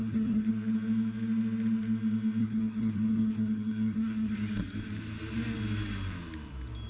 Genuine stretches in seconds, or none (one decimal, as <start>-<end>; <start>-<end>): 0.5-2.4; 4.5-6.9